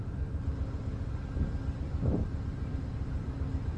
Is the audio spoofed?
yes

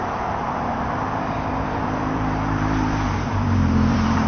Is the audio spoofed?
yes